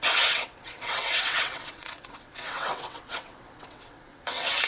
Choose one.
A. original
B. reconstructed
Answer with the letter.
B